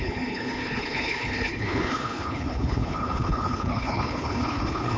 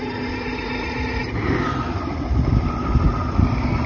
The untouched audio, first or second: second